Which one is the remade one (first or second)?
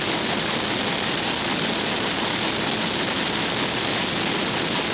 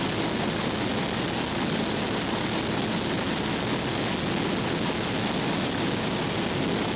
first